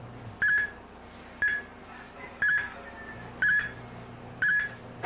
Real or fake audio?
real